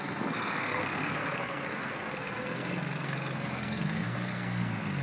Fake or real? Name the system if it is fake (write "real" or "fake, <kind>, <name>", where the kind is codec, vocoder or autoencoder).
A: fake, codec, SNAC